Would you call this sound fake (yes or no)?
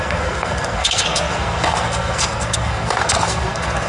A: yes